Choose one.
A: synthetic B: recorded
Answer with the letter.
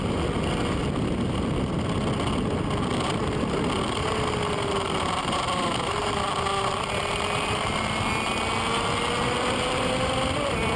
B